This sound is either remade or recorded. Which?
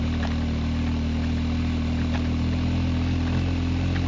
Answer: recorded